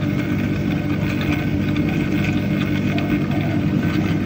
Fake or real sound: real